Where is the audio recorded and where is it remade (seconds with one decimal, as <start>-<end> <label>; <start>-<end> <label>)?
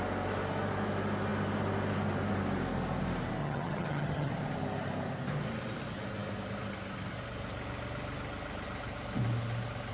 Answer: 0.0-3.4 recorded; 3.4-4.3 remade; 4.3-9.9 recorded